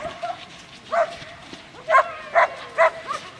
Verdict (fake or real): real